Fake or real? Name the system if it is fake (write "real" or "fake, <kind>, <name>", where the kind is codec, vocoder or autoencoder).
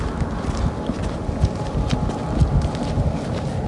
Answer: real